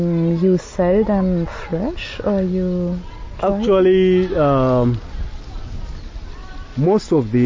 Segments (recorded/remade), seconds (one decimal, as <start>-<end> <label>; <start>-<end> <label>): 0.0-7.5 recorded